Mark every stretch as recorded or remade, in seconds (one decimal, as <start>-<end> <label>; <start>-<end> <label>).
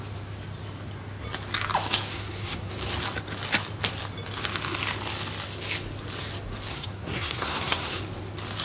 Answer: 0.0-2.1 recorded; 2.1-2.7 remade; 2.7-6.7 recorded; 6.7-8.0 remade; 8.0-8.6 recorded